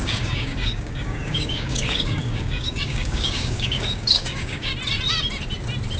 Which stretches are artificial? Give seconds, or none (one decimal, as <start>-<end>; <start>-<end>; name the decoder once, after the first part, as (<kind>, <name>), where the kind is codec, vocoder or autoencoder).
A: 0.0-4.7 (codec, DAC)